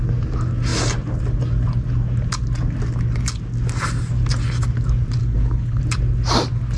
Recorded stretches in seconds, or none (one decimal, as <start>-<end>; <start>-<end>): 0.0-5.2; 5.8-6.8